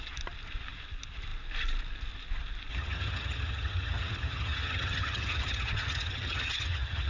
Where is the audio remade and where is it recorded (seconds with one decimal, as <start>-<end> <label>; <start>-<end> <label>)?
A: 0.0-2.7 recorded; 2.7-7.1 remade